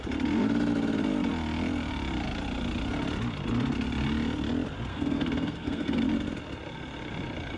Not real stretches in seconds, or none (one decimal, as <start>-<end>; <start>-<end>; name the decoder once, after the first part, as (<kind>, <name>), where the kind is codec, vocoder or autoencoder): 4.9-6.0 (codec, SNAC)